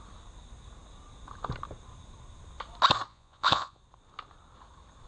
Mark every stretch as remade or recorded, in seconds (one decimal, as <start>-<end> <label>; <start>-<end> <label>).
0.0-3.1 recorded; 3.1-3.8 remade; 3.8-5.1 recorded